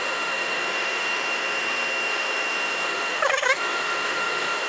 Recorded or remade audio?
remade